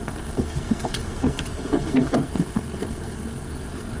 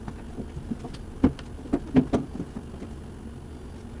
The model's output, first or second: first